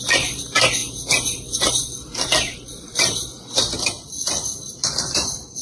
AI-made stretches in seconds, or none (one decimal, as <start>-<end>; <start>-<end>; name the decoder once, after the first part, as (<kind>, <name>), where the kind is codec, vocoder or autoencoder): 0.0-0.8 (vocoder, BigVGAN v2); 1.7-5.6